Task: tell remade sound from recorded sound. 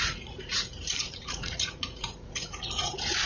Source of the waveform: remade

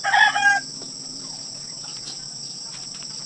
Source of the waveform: recorded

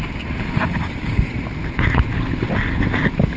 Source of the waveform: recorded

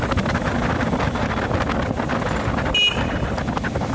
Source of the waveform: recorded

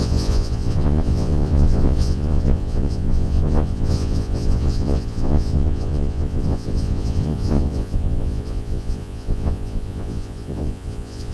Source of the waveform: remade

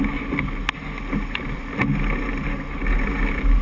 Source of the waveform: recorded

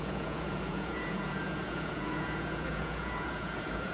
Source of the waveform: remade